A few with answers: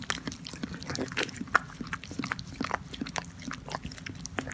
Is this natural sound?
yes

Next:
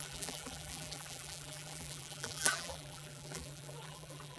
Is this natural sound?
no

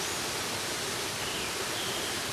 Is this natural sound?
no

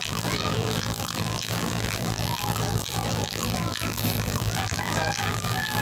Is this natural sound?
no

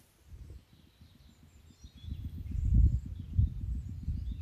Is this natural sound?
no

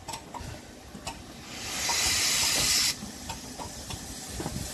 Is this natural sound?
yes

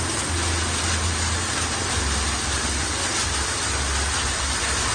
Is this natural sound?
yes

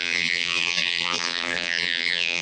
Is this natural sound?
no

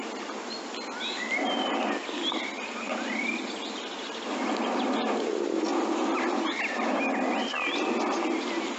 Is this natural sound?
yes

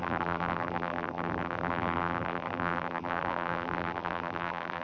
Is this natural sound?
no